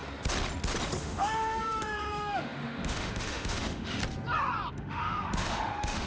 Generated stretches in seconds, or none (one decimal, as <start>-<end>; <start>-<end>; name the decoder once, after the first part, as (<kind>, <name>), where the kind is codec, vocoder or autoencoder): 1.0-4.0 (autoencoder, DAC-VAE); 4.7-6.1